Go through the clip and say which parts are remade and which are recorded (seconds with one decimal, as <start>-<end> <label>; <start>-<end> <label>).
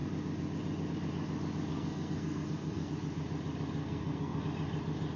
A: 0.0-1.7 recorded; 1.7-2.9 remade; 2.9-3.8 recorded; 3.8-4.4 remade; 4.4-5.2 recorded